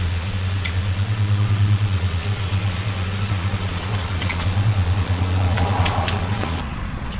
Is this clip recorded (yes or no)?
no